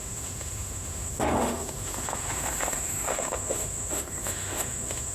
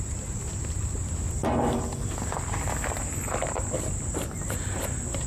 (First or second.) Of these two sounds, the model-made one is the first